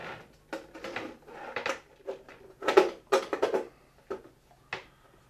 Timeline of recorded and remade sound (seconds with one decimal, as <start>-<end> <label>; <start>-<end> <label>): 0.0-5.3 recorded